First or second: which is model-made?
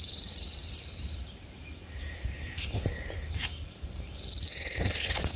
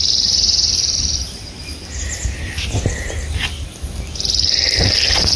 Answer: first